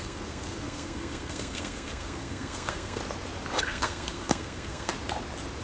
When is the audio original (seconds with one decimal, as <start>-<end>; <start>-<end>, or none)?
3.0-3.6; 4.9-5.6